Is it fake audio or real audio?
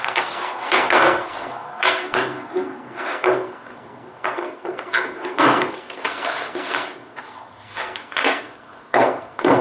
fake